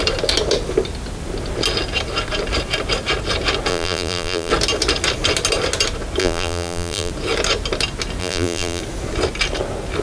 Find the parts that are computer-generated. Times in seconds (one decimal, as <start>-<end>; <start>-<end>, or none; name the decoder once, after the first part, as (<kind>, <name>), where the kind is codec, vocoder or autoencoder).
3.7-4.5 (vocoder, BigVGAN v2); 6.2-7.1; 8.2-8.8